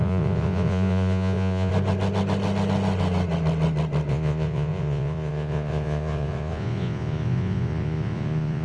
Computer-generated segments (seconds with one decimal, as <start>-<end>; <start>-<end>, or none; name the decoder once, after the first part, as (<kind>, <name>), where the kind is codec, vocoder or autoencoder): 0.0-1.7 (vocoder, Vocos); 4.1-8.6